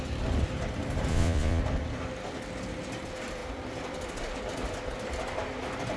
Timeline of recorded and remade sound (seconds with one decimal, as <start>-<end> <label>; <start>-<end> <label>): 0.0-1.1 recorded; 1.1-1.6 remade; 1.6-6.0 recorded